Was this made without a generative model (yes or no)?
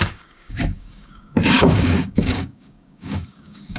no